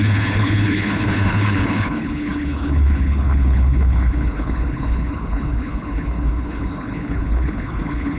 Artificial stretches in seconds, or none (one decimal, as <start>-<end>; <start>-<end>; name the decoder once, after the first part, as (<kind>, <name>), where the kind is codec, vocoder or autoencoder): 0.0-8.2 (codec, HILCodec)